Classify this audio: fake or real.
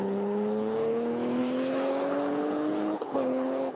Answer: fake